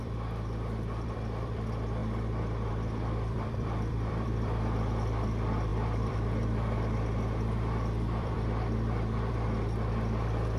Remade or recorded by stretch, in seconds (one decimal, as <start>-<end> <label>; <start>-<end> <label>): 0.0-2.0 remade; 2.0-2.7 recorded; 2.7-10.6 remade

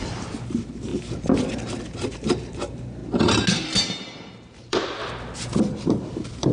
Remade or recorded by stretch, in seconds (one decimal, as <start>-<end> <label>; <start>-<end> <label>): 0.0-0.9 remade; 0.9-2.1 recorded; 2.1-3.0 remade; 3.0-4.3 recorded; 4.3-5.0 remade; 5.0-5.6 recorded; 5.6-6.5 remade

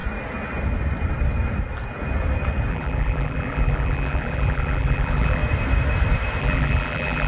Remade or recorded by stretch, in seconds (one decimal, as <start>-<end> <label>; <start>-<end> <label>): 0.0-2.7 recorded; 2.7-5.4 remade; 5.4-6.4 recorded; 6.4-7.3 remade

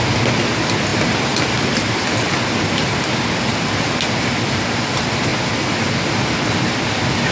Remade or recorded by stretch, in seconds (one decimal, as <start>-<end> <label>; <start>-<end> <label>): 0.0-0.9 recorded; 0.9-3.3 remade; 3.3-7.3 recorded